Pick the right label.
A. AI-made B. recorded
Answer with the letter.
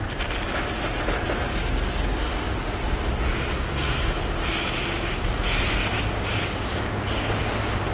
B